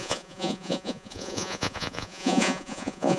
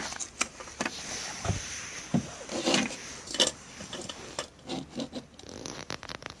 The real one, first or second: second